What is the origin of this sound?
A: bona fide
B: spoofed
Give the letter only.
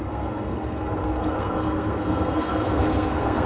B